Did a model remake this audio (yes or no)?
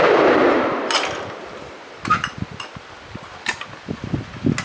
no